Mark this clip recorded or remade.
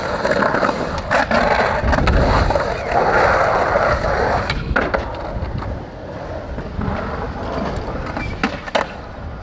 recorded